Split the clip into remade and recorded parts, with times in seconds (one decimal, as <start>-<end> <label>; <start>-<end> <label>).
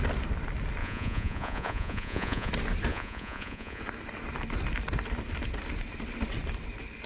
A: 0.0-0.8 recorded; 0.8-2.5 remade; 2.5-2.9 recorded; 2.9-3.8 remade; 3.8-7.1 recorded